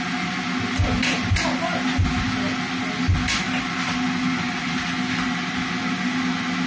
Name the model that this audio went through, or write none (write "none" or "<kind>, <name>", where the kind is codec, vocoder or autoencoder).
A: none